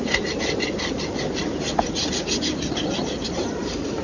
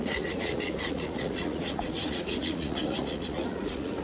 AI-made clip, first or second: second